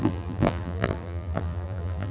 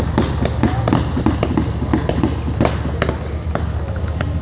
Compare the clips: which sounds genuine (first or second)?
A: second